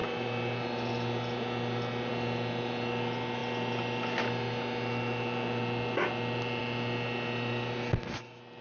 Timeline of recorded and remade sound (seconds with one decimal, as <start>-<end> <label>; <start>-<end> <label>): 0.0-8.6 recorded